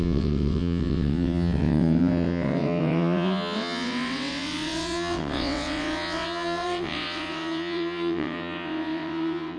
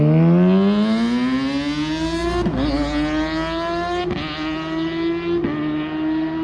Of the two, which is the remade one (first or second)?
first